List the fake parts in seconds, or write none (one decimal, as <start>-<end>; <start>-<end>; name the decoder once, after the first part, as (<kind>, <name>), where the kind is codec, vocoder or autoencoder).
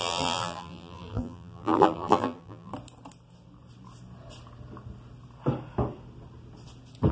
0.0-2.7 (vocoder, BigVGAN v2)